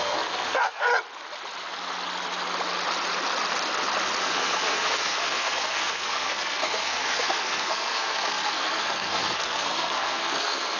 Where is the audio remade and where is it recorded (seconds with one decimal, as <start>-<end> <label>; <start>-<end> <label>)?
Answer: 0.0-0.9 remade; 0.9-4.2 recorded; 4.2-10.8 remade